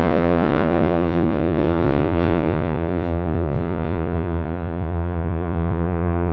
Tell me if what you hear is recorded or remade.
remade